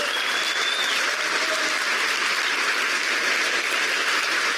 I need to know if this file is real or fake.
real